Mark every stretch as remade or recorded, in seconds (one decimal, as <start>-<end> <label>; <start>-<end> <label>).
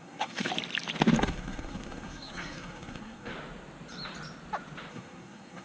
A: 0.0-0.5 remade; 0.5-1.2 recorded; 1.2-3.3 remade; 3.3-4.9 recorded; 4.9-5.6 remade